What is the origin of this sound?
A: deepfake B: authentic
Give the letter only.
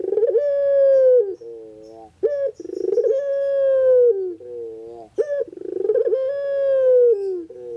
B